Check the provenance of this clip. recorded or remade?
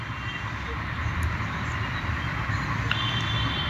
recorded